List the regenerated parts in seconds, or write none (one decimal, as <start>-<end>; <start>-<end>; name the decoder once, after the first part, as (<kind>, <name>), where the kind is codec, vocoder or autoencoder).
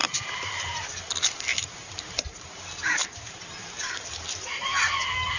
0.0-0.8 (vocoder, BigVGAN v2); 1.5-4.7